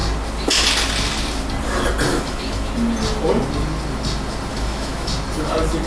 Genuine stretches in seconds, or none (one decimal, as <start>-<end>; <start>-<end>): 0.0-2.1; 2.7-4.5; 5.1-5.9